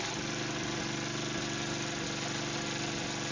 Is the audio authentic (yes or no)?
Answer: yes